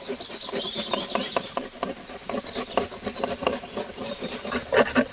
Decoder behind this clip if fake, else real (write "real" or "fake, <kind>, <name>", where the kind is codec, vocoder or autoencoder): real